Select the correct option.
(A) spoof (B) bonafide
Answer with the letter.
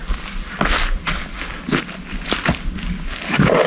B